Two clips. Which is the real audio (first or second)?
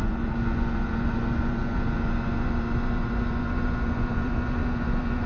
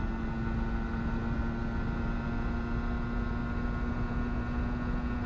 second